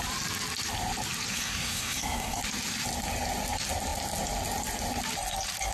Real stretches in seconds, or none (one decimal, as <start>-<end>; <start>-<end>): 0.0-1.3; 2.4-5.7